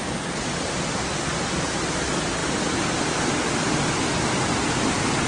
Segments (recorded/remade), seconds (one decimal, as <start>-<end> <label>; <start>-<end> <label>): 0.0-2.4 recorded; 2.4-4.0 remade; 4.0-5.3 recorded